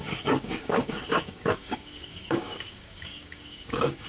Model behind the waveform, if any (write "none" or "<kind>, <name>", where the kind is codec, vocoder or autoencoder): codec, DAC